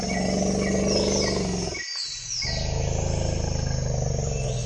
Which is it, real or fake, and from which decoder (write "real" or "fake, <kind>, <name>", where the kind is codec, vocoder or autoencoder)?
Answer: real